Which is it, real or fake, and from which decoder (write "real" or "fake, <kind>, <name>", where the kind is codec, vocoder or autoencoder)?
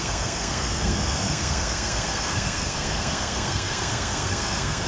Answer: fake, codec, SNAC